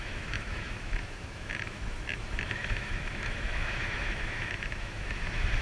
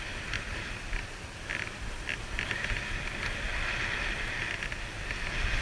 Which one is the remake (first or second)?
first